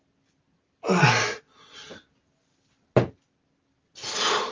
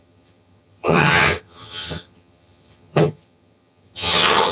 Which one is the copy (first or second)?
second